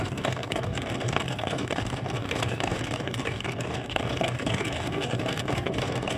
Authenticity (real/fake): fake